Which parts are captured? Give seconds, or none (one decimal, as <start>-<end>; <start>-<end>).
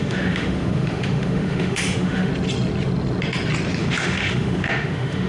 2.3-3.8